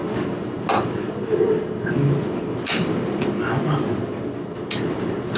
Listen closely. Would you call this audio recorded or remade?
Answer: recorded